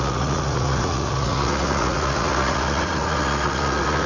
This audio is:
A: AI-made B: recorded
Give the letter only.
A